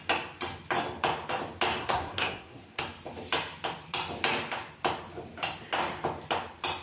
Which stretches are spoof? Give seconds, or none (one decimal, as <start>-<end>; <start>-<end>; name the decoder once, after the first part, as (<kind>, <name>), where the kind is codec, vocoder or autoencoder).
1.8-2.8 (codec, SNAC)